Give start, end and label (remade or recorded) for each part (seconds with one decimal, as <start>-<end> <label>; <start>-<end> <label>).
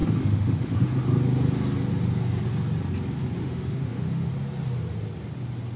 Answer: 0.0-0.8 remade; 0.8-3.4 recorded; 3.4-4.3 remade; 4.3-5.8 recorded